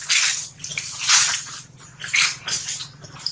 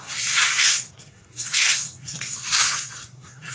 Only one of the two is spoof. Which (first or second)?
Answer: second